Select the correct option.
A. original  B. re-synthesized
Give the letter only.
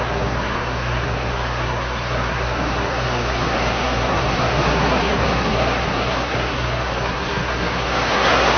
B